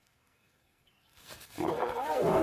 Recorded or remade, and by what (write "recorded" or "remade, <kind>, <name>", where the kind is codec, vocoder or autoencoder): remade, codec, SNAC